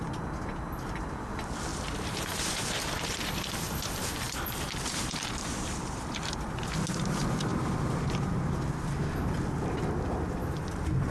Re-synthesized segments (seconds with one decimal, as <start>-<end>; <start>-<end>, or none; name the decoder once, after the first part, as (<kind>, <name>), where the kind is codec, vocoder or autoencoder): 1.7-6.5 (vocoder, BigVGAN v2); 7.5-8.0; 10.4-11.1